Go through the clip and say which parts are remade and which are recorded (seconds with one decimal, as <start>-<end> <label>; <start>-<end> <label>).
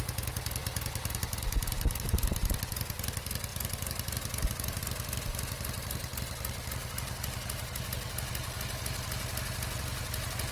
0.0-10.5 recorded